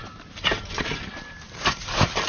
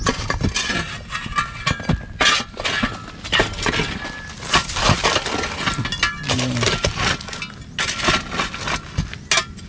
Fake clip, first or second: first